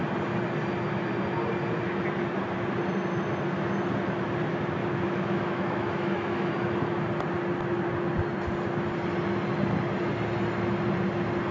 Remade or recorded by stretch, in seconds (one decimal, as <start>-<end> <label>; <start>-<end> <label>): 0.0-4.8 recorded; 4.8-6.5 remade; 6.5-11.5 recorded